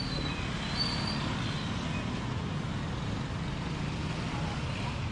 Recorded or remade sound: recorded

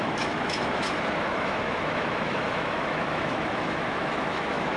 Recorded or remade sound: remade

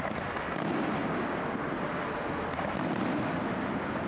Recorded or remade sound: recorded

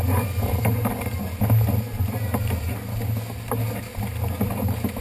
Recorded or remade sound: recorded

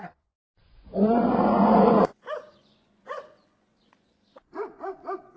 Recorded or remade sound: remade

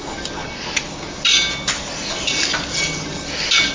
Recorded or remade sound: recorded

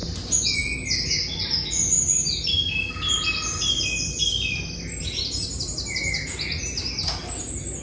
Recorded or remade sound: recorded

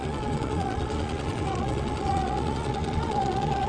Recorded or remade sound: remade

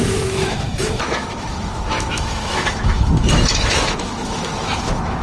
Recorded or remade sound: remade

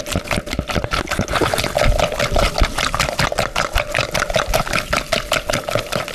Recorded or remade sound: recorded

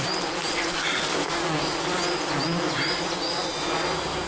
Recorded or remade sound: recorded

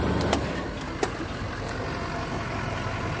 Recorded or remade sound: recorded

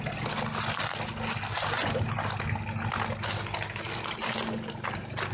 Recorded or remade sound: recorded